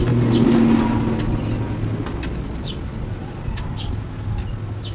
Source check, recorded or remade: recorded